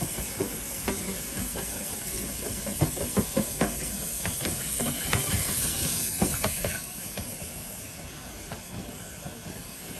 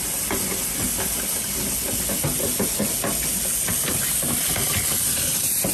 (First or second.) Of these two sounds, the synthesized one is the first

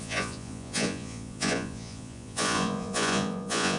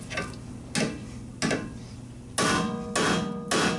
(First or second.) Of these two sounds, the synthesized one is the first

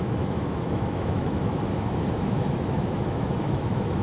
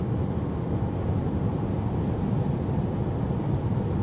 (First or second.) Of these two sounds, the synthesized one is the first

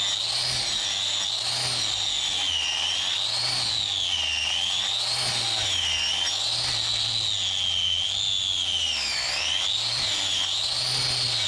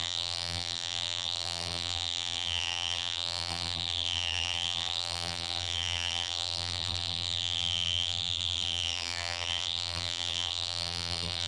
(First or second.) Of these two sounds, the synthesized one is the second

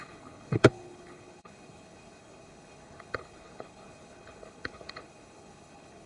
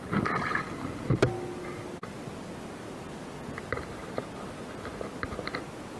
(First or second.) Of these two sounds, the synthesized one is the first